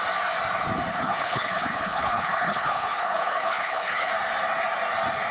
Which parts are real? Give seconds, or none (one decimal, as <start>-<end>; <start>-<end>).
0.0-0.9; 4.1-5.3